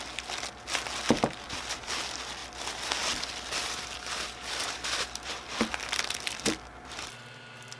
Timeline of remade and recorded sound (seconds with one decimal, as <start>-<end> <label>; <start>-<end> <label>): 0.0-7.8 recorded